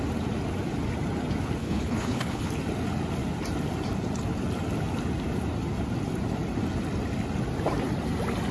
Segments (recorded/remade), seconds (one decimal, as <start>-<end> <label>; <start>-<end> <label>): 0.0-1.6 recorded; 1.6-2.5 remade; 2.5-8.5 recorded